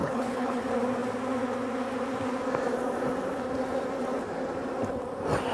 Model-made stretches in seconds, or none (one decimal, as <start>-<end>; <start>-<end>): 0.0-0.6